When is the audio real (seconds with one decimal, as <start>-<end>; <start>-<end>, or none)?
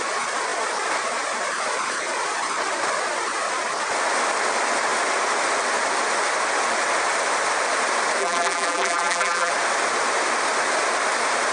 0.0-8.2; 9.5-11.5